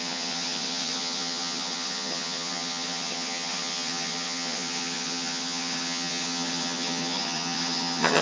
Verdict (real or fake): fake